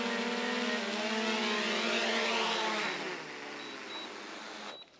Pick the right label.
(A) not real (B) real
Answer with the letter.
B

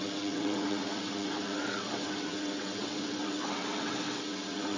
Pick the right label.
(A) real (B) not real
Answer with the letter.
B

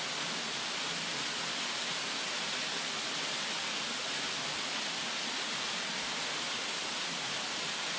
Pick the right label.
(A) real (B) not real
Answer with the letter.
A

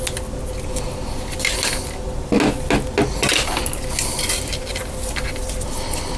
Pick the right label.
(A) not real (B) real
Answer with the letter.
B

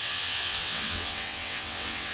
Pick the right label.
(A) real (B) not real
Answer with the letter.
B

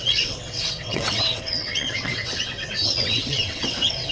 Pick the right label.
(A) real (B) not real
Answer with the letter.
B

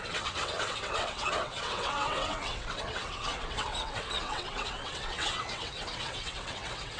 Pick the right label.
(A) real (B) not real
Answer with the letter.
B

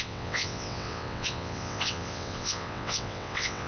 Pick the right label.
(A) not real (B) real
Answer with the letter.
A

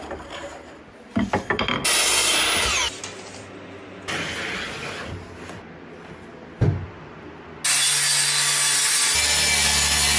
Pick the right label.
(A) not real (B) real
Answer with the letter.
B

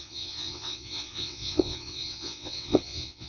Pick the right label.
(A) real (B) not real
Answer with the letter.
B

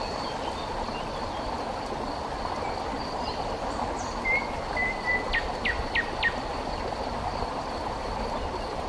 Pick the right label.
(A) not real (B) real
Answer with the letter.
B